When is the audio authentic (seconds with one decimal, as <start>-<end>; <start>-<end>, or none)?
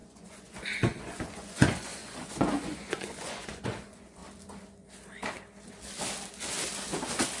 4.2-7.4